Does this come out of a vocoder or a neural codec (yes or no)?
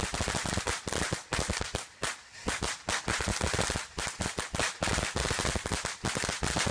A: no